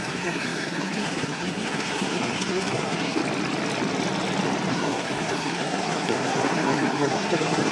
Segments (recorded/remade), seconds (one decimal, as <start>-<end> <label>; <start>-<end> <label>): 0.0-3.2 remade; 3.2-4.7 recorded; 4.7-7.7 remade